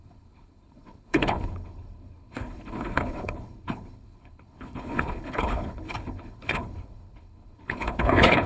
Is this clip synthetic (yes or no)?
yes